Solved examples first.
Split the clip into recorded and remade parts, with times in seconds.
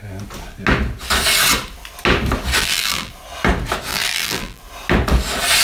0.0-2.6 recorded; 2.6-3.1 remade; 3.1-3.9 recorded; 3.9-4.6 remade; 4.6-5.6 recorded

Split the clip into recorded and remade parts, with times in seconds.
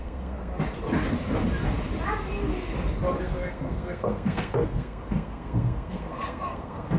0.0-0.5 remade; 0.5-3.2 recorded; 3.2-7.0 remade